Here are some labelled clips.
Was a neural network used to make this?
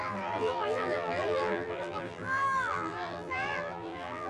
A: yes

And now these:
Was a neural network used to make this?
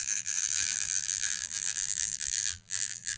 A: yes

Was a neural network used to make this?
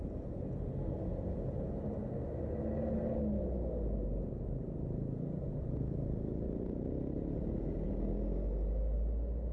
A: no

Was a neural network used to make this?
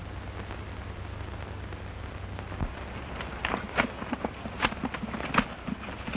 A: no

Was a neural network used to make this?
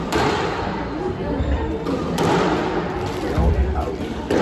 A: yes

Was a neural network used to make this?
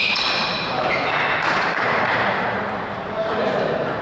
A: yes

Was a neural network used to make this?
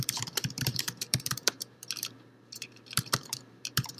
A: yes